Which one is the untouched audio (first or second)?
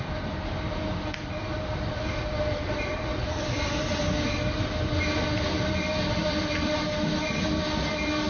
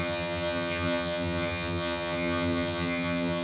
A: first